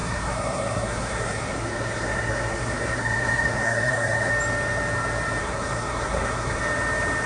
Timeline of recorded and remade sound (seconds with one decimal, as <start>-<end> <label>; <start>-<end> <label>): 0.0-4.3 remade; 4.3-5.4 recorded; 5.4-6.6 remade; 6.6-7.3 recorded